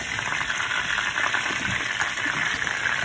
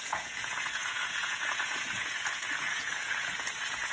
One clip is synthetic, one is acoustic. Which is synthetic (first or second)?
second